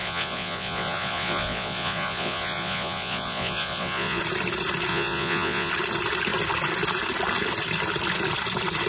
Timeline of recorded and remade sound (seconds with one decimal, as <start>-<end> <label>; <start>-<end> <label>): 0.0-4.2 remade; 4.2-4.9 recorded; 4.9-5.7 remade; 5.7-8.9 recorded